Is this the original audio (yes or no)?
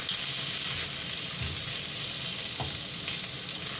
yes